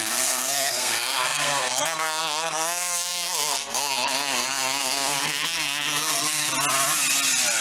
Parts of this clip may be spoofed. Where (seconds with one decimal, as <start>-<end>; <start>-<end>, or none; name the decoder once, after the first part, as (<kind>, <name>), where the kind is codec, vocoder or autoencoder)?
0.0-6.5 (codec, SNAC)

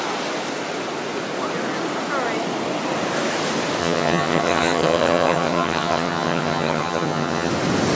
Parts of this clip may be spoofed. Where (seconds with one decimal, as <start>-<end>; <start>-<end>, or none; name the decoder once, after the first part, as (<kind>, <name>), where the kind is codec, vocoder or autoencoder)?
3.8-7.5 (vocoder, HiFi-GAN)

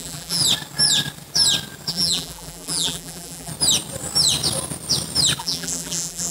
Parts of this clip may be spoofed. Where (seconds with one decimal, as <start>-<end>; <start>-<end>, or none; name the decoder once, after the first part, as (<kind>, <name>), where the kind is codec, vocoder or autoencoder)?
0.0-0.4 (vocoder, BigVGAN v2); 1.9-3.5; 5.4-6.3

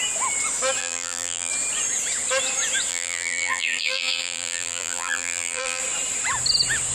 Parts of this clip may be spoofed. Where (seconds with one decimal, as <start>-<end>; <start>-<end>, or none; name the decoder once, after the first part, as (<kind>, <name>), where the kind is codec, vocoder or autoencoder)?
0.8-1.5 (vocoder, BigVGAN v2); 2.9-5.8

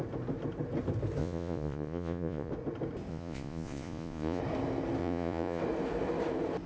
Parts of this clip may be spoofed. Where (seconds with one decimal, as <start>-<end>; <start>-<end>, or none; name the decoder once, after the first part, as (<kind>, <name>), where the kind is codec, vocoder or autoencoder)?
1.2-2.5 (vocoder, Vocos); 3.1-4.4; 5.0-5.6

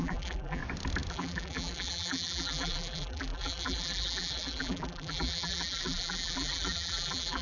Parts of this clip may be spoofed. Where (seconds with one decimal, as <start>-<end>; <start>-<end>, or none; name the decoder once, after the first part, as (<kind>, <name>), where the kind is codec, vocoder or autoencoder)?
0.0-0.6 (vocoder, BigVGAN v2); 1.1-7.4

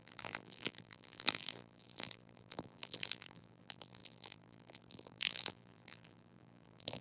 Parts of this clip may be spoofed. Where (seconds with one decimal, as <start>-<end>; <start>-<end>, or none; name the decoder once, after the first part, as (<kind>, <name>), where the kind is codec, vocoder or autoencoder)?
0.0-7.0 (vocoder, BigVGAN v2)